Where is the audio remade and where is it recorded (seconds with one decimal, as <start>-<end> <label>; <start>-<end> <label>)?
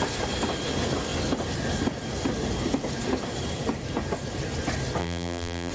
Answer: 0.0-5.0 recorded; 5.0-5.7 remade